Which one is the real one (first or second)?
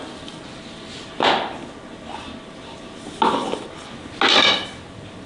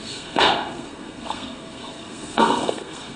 first